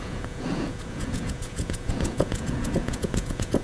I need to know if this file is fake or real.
fake